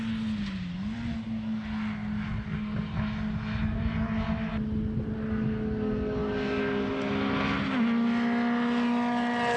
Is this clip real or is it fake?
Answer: real